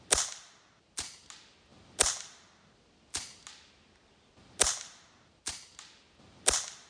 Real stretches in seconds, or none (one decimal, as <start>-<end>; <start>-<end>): 0.0-6.9